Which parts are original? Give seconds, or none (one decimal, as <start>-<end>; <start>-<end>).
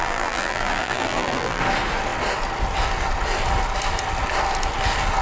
1.6-5.2